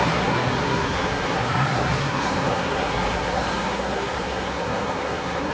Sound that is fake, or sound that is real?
fake